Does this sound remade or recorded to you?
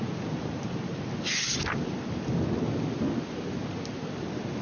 recorded